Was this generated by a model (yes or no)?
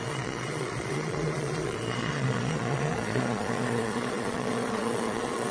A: yes